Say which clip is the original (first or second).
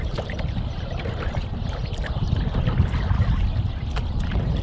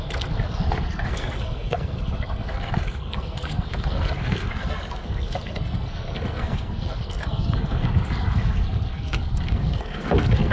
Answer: first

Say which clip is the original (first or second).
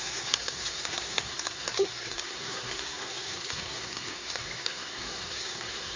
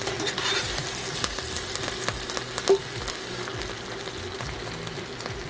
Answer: second